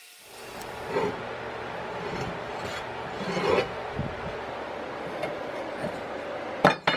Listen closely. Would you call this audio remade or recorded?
recorded